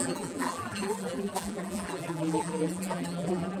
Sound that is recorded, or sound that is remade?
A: remade